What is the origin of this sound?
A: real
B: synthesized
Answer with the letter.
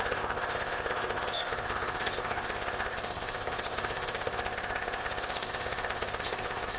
B